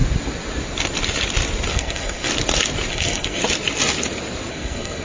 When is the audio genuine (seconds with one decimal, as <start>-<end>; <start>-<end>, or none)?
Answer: 0.0-1.7; 2.3-2.9; 3.4-4.5